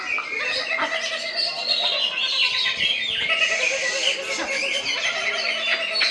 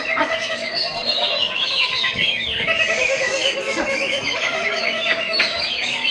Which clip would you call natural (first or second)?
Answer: first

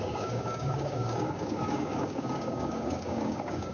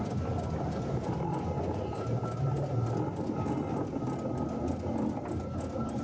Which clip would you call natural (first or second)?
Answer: second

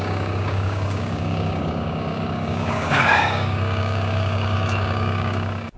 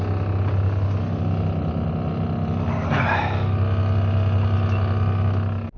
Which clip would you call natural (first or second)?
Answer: second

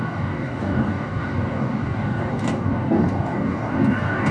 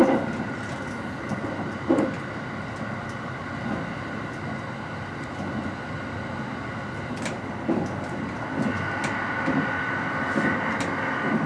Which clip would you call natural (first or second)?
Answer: second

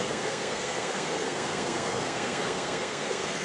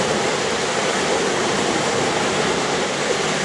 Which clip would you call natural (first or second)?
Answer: second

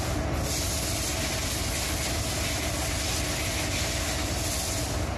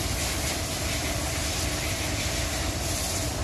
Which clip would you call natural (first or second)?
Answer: first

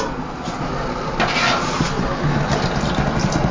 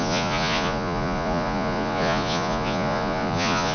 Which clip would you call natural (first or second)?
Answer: first